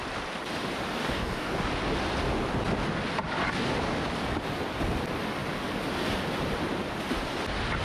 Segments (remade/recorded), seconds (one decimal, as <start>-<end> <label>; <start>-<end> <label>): 0.0-1.0 recorded; 1.0-1.7 remade; 1.7-7.8 recorded